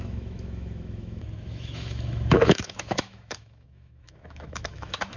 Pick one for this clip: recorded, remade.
remade